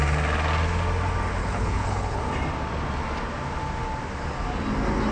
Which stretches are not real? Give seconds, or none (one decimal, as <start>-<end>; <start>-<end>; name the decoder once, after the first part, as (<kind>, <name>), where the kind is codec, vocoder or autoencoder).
1.4-2.2 (codec, HILCodec)